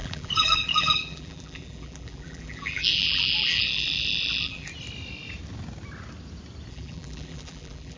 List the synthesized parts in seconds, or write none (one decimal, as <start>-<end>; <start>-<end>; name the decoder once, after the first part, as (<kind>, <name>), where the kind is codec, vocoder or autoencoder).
0.0-4.7 (vocoder, BigVGAN v2); 6.7-8.0